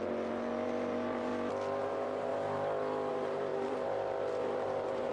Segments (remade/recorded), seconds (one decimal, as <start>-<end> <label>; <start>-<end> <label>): 0.0-1.3 remade; 1.3-1.8 recorded; 1.8-2.3 remade; 2.3-3.1 recorded; 3.1-5.1 remade

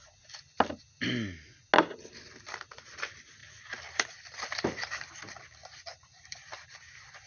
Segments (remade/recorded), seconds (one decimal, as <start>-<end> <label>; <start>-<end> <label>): 0.0-3.4 recorded; 3.4-7.3 remade

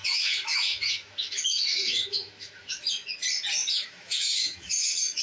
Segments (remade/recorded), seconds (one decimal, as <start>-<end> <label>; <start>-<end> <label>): 0.0-3.1 remade; 3.1-3.6 recorded; 3.6-5.2 remade

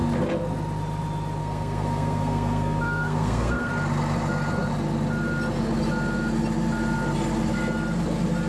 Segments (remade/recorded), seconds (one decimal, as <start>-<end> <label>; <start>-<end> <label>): 0.0-1.4 recorded; 1.4-3.7 remade; 3.7-8.5 recorded